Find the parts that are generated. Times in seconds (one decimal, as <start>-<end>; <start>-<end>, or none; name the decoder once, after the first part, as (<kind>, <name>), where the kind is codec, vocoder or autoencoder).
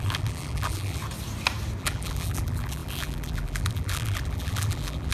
0.0-1.0 (vocoder, BigVGAN v2); 1.8-5.1